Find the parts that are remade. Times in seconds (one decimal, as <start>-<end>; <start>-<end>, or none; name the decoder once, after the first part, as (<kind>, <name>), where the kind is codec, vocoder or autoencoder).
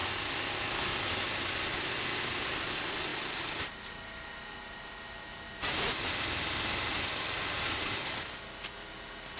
none